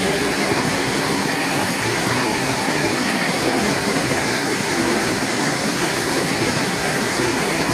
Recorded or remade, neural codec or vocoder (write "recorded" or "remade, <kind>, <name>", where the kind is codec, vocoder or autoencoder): remade, codec, SNAC